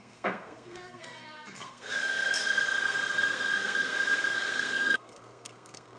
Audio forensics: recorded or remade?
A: remade